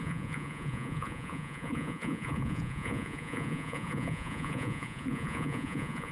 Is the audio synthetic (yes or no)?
yes